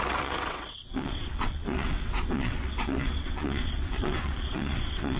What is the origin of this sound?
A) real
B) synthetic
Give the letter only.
B